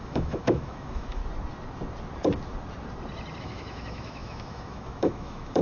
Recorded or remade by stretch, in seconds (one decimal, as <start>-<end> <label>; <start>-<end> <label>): 0.0-1.2 remade; 1.2-3.4 recorded; 3.4-5.6 remade